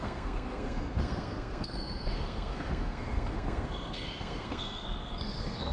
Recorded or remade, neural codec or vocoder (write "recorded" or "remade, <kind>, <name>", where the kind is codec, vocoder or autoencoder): remade, codec, SNAC